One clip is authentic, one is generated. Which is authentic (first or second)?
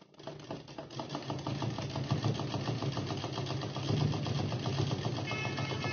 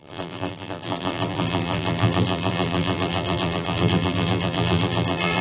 first